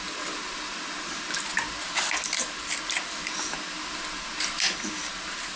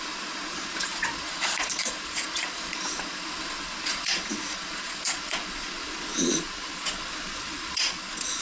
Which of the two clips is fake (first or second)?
second